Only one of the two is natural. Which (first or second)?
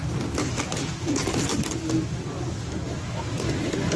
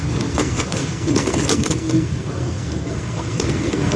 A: first